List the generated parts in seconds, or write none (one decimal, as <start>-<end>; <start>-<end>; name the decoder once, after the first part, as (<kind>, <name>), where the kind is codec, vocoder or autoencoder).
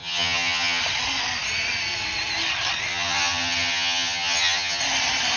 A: 0.0-0.8 (vocoder, HiFi-GAN); 2.9-4.8